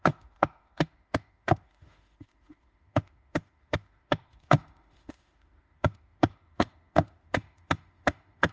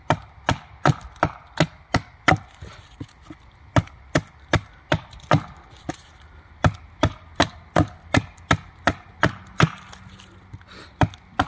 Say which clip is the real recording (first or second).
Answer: second